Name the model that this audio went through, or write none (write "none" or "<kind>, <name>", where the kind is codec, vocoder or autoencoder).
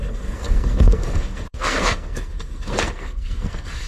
codec, SNAC